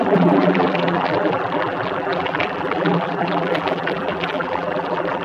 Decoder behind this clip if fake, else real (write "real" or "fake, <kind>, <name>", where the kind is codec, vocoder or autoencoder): fake, vocoder, BigVGAN v2